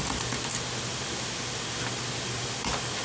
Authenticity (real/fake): real